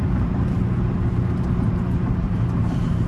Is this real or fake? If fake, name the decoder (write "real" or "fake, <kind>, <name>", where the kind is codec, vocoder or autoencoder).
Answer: fake, vocoder, BigVGAN v2